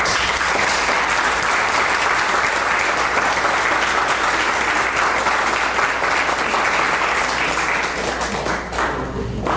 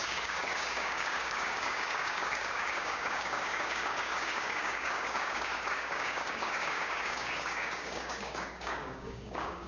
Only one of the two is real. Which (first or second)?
first